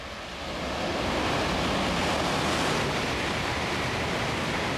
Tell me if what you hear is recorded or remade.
recorded